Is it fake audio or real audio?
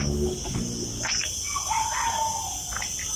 real